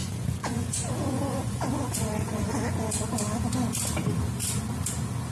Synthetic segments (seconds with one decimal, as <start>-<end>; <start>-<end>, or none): 0.0-3.2